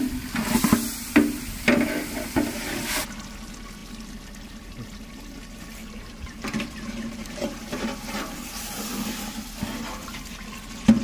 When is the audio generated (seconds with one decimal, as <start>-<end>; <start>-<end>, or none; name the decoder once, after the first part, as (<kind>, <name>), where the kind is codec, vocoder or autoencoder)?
5.8-8.8 (vocoder, BigVGAN v2)